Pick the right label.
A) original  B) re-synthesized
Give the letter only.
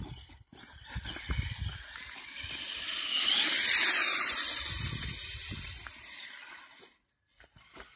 A